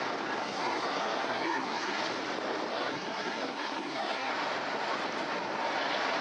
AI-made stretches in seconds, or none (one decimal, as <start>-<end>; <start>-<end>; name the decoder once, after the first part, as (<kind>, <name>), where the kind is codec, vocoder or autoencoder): 0.4-2.0 (codec, SNAC); 2.7-4.3